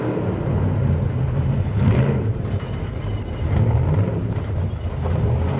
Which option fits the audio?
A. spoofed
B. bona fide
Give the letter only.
B